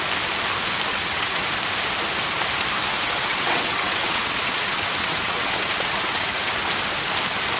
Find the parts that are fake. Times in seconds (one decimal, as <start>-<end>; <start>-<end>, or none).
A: 0.9-1.4; 3.0-6.7